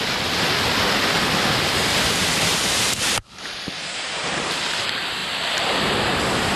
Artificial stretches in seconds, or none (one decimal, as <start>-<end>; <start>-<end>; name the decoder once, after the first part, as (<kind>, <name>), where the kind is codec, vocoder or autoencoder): 2.5-4.5 (vocoder, BigVGAN v2)